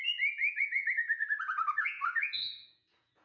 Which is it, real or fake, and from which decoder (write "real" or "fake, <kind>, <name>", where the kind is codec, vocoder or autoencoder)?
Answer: fake, vocoder, Vocos